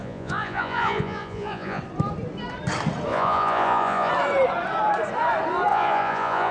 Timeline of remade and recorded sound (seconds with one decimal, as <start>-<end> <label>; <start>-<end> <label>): 0.0-1.8 remade; 1.8-3.1 recorded; 3.1-4.1 remade; 4.1-5.7 recorded; 5.7-6.5 remade